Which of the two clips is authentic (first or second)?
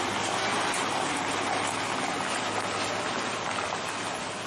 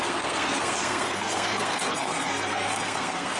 first